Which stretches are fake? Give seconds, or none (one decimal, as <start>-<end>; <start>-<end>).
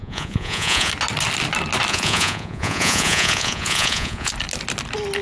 0.0-0.9; 1.9-4.3